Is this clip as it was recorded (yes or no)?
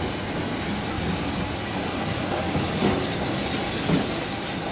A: yes